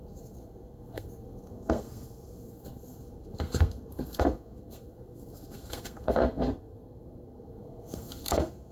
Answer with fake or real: fake